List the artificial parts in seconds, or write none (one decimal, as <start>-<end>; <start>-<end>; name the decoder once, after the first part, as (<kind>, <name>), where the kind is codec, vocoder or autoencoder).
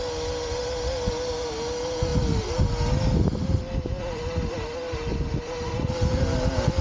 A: 5.1-5.9 (vocoder, BigVGAN v2)